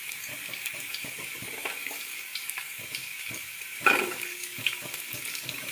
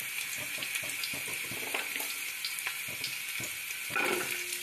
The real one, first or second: second